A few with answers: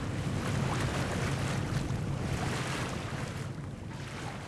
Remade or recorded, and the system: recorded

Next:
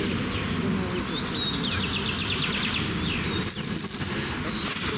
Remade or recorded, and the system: recorded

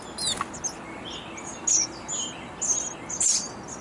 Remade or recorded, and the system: recorded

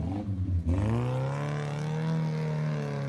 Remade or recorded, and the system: recorded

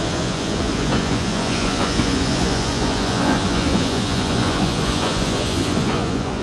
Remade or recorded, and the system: remade, vocoder, Vocos